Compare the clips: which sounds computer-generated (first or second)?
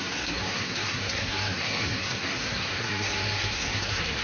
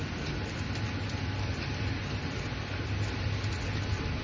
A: first